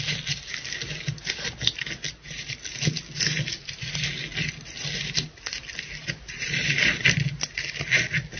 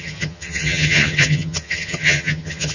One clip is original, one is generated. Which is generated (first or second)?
second